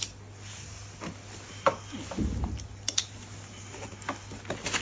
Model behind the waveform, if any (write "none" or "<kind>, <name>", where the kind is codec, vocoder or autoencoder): none